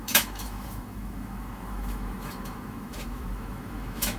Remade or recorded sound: remade